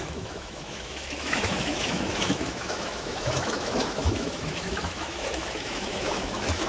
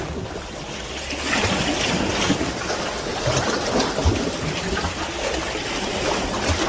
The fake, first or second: first